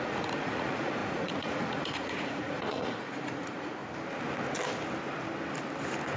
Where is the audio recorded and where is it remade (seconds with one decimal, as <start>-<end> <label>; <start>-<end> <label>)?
0.0-3.8 remade; 3.8-6.2 recorded